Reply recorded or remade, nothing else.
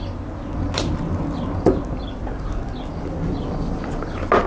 recorded